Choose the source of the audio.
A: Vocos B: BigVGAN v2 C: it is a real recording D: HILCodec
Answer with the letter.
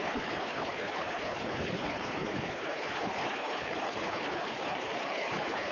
D